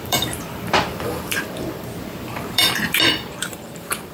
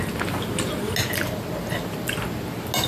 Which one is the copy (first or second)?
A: first